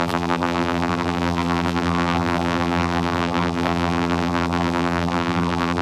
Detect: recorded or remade remade